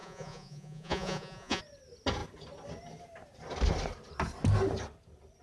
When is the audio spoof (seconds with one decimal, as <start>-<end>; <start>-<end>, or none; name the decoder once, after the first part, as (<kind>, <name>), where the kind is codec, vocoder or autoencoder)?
0.0-1.6 (vocoder, Vocos)